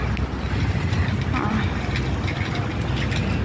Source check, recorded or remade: recorded